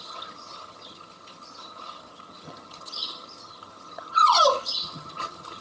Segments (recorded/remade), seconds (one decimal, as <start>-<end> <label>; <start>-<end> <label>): 0.0-5.6 remade